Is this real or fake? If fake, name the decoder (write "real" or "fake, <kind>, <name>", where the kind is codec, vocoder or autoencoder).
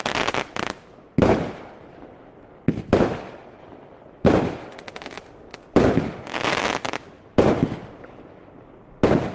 real